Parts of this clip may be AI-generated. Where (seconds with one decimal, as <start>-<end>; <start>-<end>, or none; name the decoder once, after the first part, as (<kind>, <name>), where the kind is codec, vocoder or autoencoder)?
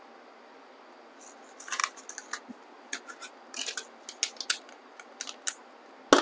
none